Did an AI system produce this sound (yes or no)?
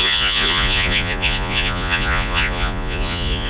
yes